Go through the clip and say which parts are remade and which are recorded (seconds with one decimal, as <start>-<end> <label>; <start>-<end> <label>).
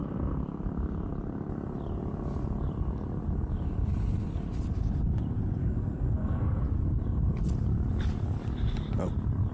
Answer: 0.0-5.6 recorded; 5.6-6.6 remade; 6.6-9.5 recorded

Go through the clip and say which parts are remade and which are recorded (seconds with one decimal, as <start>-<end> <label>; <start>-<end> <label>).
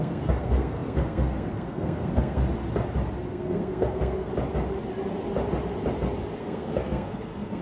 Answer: 0.0-2.4 remade; 2.4-3.3 recorded; 3.3-4.3 remade; 4.3-6.4 recorded; 6.4-7.6 remade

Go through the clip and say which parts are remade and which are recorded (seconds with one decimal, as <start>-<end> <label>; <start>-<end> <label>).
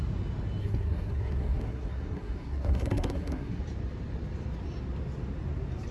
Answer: 0.0-0.6 recorded; 0.6-3.6 remade; 3.6-5.9 recorded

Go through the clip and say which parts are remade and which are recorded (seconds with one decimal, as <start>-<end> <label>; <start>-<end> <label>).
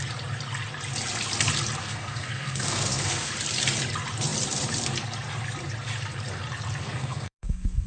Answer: 0.0-1.8 recorded; 1.8-3.3 remade; 3.3-6.8 recorded; 6.8-7.9 remade